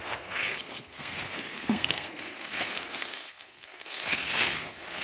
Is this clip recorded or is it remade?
remade